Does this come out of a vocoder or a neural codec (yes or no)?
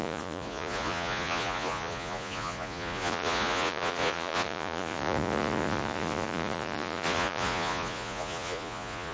yes